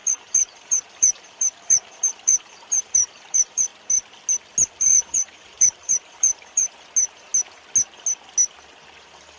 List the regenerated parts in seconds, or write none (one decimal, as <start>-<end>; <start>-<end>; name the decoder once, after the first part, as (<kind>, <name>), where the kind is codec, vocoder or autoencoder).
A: 0.0-3.7 (vocoder, BigVGAN v2); 4.8-6.6; 9.0-9.4